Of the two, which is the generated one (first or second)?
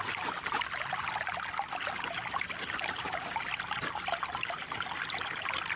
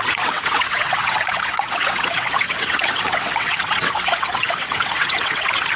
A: second